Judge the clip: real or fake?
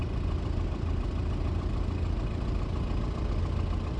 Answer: real